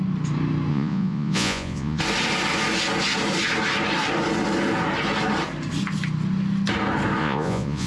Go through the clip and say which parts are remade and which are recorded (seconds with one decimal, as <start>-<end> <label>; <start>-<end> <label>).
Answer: 0.0-0.7 recorded; 0.7-2.0 remade; 2.0-7.2 recorded; 7.2-7.9 remade